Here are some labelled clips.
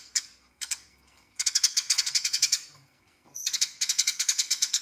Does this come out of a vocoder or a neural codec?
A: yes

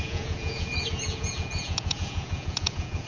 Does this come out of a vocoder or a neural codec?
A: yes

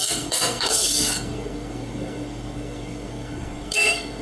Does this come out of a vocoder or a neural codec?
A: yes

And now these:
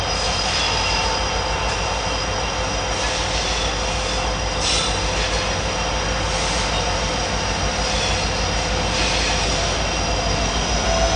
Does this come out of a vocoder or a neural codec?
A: no